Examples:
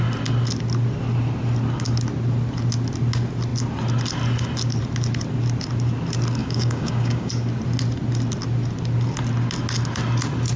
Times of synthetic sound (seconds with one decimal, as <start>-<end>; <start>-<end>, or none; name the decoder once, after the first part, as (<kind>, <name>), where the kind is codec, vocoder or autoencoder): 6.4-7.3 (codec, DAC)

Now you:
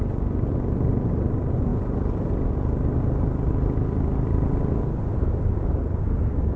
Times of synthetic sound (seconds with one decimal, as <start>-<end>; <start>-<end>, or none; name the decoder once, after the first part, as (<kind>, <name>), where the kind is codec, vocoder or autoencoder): none

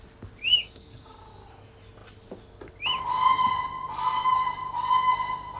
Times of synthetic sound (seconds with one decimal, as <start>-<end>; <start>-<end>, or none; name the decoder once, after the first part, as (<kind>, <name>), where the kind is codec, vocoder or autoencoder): 0.5-1.2 (codec, DAC)

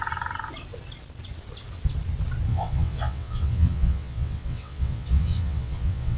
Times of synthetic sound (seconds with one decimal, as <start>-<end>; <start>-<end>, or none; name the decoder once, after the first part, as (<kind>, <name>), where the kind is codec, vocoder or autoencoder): 2.5-6.2 (vocoder, WaveNeXt)

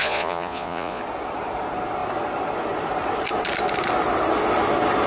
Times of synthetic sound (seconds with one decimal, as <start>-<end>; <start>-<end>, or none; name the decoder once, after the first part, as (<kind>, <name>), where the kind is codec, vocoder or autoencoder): 0.0-1.0 (vocoder, Vocos)

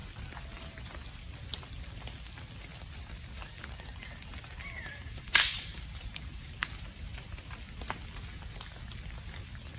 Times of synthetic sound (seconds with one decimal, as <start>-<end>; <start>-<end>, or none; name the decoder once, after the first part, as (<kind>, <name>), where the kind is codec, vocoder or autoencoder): 4.6-6.5 (vocoder, BigVGAN v2)

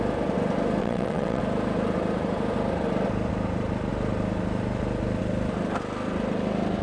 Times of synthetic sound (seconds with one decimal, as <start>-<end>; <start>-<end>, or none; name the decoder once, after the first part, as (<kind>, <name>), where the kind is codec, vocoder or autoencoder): 0.8-1.4 (vocoder, WaveNeXt)

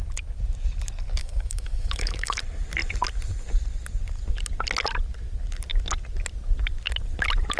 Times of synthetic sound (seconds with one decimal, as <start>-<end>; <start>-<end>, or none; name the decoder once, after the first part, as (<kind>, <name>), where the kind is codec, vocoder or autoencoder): 1.2-2.4 (autoencoder, DAC-VAE)